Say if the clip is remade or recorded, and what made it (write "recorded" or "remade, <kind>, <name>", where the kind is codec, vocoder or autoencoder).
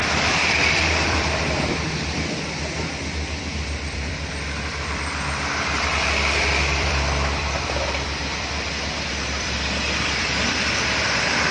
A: remade, vocoder, BigVGAN v2